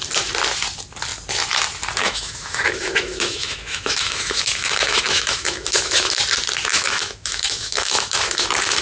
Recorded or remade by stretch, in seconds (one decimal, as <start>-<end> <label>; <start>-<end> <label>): 0.0-2.0 recorded; 2.0-6.2 remade; 6.2-6.7 recorded; 6.7-8.8 remade